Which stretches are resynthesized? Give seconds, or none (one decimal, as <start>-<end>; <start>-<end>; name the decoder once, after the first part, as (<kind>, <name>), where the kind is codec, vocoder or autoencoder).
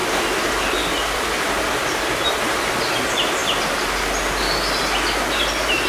none